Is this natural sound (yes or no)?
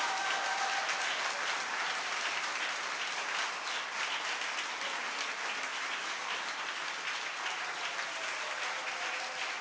yes